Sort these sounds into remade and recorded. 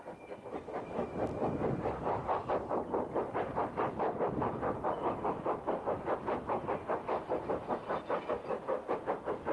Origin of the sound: recorded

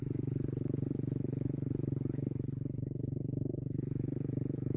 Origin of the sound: remade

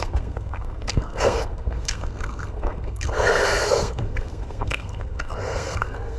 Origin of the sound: remade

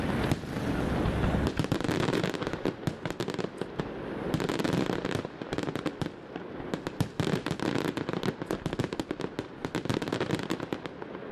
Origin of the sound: recorded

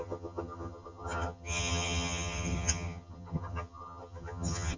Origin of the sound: remade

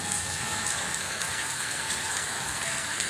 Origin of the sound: remade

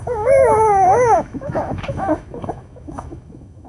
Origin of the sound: remade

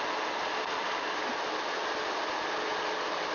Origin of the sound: recorded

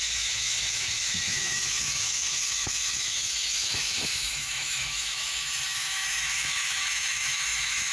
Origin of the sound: remade